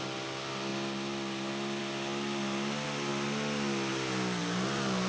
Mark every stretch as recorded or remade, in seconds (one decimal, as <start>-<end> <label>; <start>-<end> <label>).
0.0-5.1 recorded